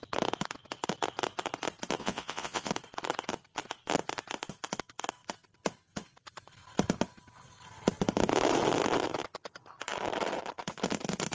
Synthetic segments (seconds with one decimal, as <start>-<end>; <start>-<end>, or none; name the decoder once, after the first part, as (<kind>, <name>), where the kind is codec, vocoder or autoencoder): 2.0-2.7 (vocoder, Vocos)